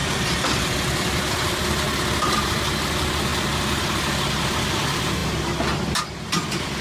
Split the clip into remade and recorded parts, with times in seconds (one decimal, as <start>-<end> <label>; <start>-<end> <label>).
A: 0.0-1.2 remade; 1.2-3.3 recorded; 3.3-4.3 remade; 4.3-6.8 recorded